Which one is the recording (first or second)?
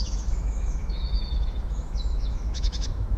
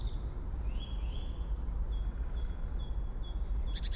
second